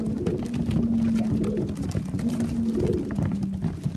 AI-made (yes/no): no